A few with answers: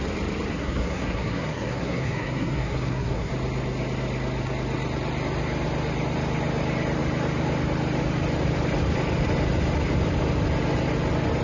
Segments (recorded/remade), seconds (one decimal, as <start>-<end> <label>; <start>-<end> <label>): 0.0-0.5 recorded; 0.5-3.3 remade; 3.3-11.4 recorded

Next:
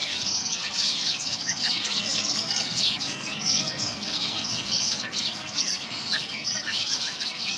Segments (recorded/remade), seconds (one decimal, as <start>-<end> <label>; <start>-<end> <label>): 0.0-7.6 remade

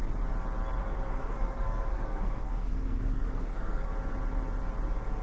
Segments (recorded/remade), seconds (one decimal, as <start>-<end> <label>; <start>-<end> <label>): 0.0-0.8 recorded; 0.8-3.9 remade; 3.9-5.2 recorded

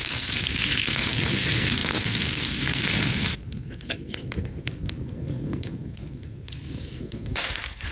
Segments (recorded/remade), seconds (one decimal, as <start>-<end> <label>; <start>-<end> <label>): 0.0-7.9 remade